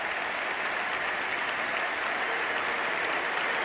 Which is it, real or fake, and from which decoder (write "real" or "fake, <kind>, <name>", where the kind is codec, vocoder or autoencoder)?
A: real